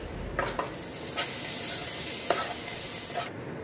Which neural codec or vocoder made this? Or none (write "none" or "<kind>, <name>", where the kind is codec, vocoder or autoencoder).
none